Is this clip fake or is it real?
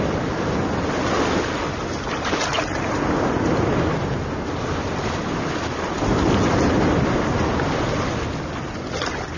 real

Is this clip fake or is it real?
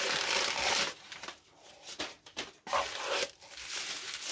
real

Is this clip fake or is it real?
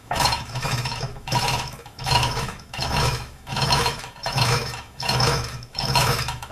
fake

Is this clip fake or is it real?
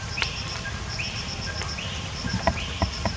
fake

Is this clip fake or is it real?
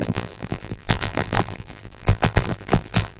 fake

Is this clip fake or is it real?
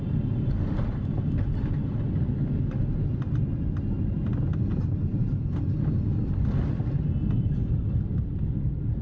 real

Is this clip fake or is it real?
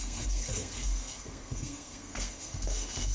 fake